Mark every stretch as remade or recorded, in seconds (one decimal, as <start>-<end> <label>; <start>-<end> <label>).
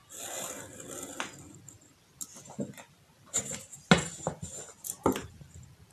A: 0.0-5.9 recorded